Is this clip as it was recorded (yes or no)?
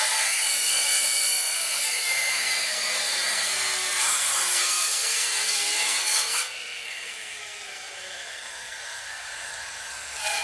no